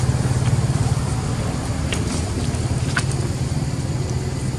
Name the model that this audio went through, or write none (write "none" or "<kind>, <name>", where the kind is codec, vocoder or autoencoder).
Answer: none